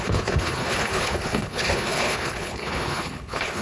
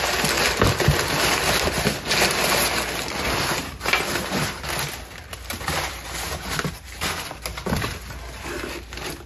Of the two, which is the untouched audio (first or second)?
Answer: second